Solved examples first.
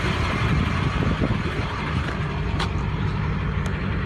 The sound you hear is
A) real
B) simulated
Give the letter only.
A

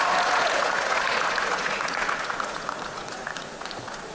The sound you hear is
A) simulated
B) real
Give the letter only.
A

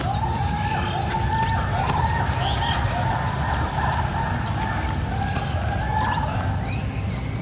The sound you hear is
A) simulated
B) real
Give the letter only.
B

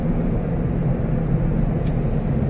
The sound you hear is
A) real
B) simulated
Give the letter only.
A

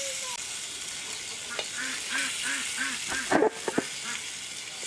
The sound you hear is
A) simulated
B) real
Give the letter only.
B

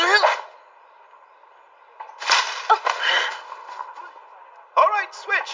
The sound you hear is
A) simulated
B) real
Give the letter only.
B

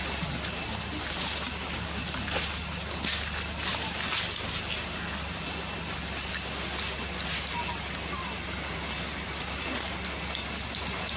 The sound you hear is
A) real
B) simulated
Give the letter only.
A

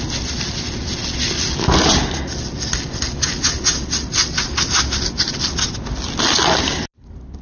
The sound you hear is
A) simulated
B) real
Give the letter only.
B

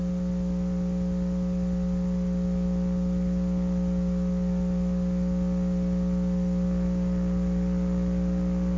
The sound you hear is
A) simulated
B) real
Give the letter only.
B